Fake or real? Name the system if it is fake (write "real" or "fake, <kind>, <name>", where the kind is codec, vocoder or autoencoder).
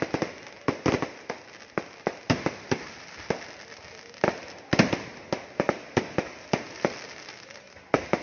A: real